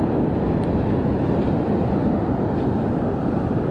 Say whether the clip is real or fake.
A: real